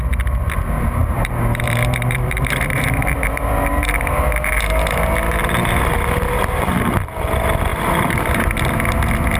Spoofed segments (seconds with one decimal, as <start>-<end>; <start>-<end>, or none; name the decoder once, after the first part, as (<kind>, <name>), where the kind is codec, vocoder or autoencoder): 1.0-5.8 (vocoder, BigVGAN v2); 7.7-8.5